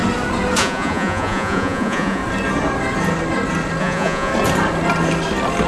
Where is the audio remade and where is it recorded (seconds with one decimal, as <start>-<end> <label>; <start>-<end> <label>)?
0.0-0.6 recorded; 0.6-2.2 remade; 2.2-3.8 recorded; 3.8-4.3 remade; 4.3-5.7 recorded